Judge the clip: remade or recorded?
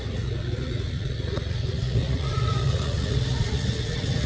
remade